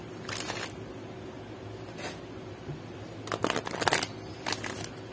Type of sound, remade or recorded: recorded